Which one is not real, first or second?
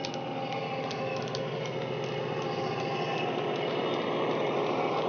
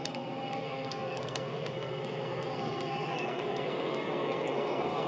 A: second